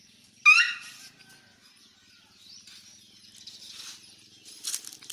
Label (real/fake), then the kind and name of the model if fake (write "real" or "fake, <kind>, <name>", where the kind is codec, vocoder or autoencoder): real